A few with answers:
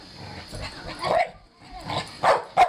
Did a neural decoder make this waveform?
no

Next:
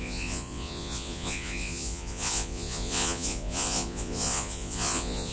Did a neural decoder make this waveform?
yes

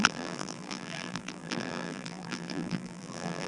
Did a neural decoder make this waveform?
yes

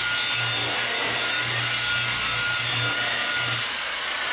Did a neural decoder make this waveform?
no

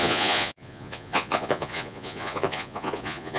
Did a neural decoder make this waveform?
yes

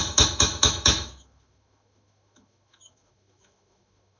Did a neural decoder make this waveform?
yes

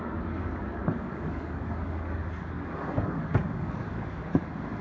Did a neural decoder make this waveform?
yes